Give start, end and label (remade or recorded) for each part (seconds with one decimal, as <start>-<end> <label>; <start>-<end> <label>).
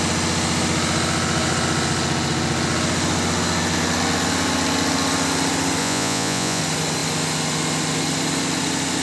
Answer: 0.0-5.8 recorded; 5.8-6.6 remade; 6.6-9.0 recorded